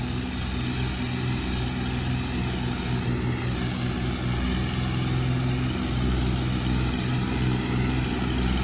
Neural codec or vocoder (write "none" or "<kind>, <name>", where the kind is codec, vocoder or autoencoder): none